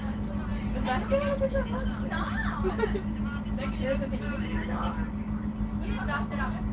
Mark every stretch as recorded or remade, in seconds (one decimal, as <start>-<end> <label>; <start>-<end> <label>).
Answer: 0.0-6.7 recorded